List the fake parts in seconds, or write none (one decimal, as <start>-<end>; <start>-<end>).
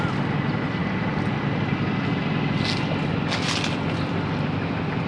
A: none